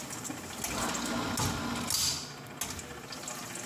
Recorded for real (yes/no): yes